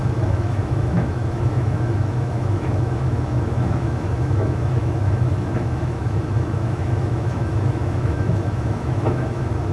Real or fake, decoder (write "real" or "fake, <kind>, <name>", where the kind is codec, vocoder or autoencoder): fake, autoencoder, DAC-VAE